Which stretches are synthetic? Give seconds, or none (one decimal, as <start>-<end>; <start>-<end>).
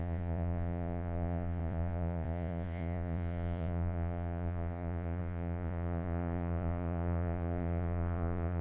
0.0-8.6